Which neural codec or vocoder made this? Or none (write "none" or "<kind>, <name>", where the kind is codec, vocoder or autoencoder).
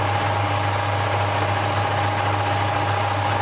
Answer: none